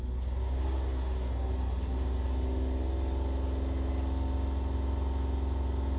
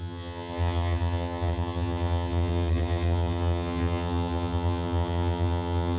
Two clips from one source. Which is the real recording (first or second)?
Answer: first